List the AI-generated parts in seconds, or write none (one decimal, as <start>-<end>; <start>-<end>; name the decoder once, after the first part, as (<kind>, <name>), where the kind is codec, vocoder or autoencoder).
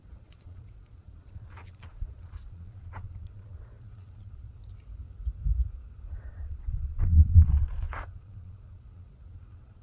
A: 0.0-4.6 (vocoder, Vocos); 6.3-9.8